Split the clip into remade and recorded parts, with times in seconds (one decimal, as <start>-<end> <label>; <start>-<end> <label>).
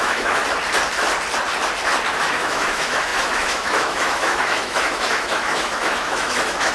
0.0-0.4 remade; 0.4-2.2 recorded; 2.2-6.7 remade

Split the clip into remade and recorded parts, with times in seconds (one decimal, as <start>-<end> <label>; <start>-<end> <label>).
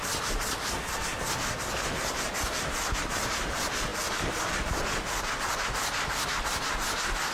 0.0-3.9 recorded; 3.9-4.4 remade; 4.4-7.3 recorded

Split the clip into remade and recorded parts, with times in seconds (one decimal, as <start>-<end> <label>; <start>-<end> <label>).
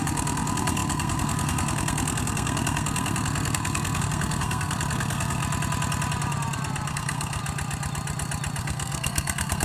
0.0-5.4 remade; 5.4-6.9 recorded; 6.9-7.4 remade; 7.4-8.6 recorded; 8.6-9.6 remade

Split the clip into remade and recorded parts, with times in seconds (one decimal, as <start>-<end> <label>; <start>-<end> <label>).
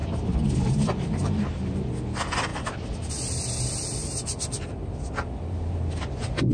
0.0-1.9 remade; 1.9-4.0 recorded; 4.0-5.9 remade; 5.9-6.5 recorded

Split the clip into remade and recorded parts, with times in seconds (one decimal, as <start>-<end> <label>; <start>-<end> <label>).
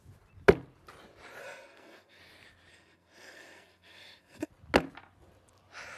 0.0-1.4 recorded; 1.4-2.2 remade; 2.2-2.7 recorded; 2.7-4.5 remade; 4.5-6.0 recorded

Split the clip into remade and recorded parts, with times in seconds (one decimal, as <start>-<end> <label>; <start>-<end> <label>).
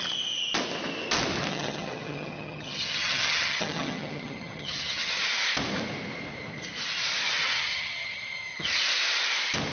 0.0-1.5 recorded; 1.5-5.2 remade; 5.2-7.4 recorded; 7.4-8.8 remade; 8.8-9.7 recorded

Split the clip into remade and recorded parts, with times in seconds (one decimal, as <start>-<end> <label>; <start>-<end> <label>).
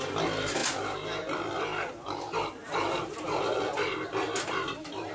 0.0-2.6 recorded; 2.6-3.1 remade; 3.1-5.1 recorded